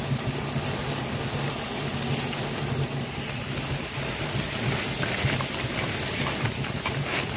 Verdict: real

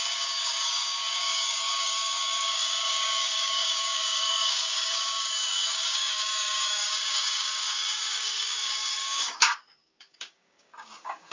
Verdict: fake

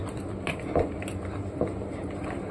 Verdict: real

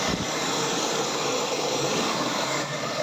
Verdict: fake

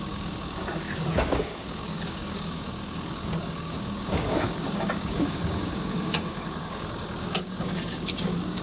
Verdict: fake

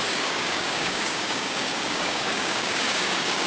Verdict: fake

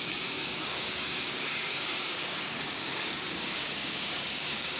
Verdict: fake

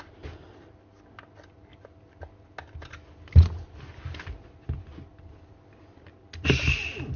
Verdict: real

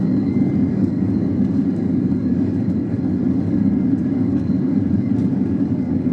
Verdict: fake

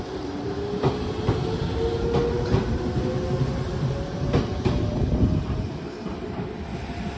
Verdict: real